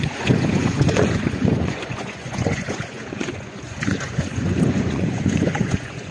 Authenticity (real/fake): fake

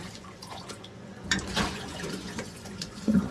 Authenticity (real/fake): fake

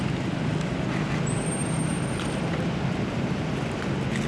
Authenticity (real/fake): real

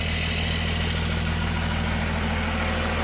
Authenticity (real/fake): real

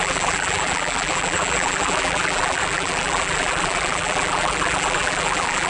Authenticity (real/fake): fake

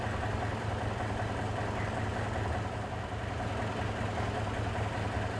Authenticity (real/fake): real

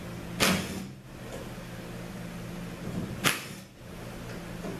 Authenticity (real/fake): real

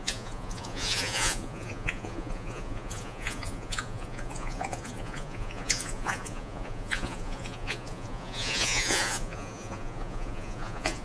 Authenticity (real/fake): fake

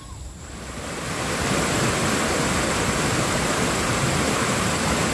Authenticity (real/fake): real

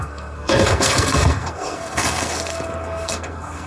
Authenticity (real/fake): fake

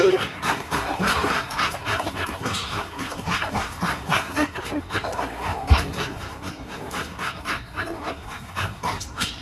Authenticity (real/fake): fake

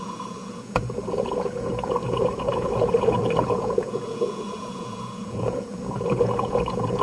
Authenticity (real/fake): fake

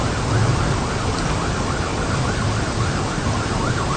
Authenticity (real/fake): real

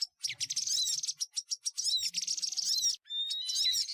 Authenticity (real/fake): real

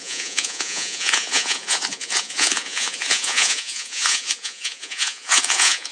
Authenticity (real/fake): fake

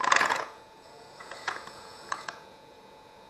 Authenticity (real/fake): fake